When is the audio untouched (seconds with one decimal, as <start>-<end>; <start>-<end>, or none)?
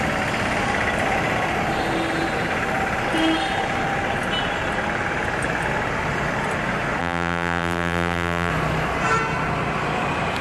0.0-7.0; 8.5-10.4